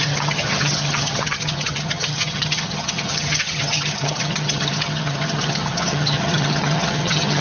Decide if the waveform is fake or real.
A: fake